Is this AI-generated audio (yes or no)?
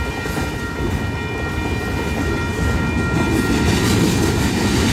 no